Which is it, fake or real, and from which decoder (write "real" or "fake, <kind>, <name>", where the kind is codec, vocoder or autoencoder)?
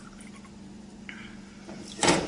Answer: real